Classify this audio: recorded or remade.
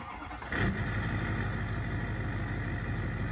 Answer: recorded